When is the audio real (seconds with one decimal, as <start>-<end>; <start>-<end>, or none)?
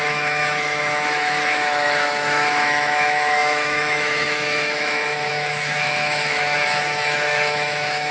none